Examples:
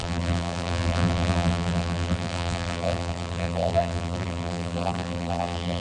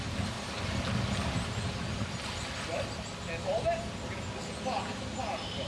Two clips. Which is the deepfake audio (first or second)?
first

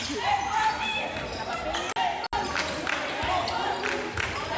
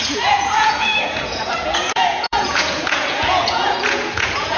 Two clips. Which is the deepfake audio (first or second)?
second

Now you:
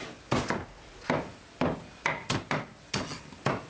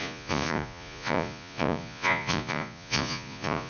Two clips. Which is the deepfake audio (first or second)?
second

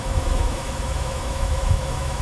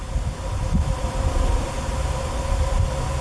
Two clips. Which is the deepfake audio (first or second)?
first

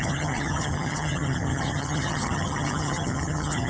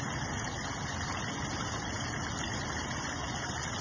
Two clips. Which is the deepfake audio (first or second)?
first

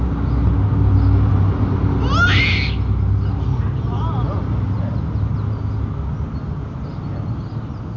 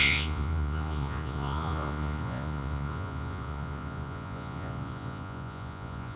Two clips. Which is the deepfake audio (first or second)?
second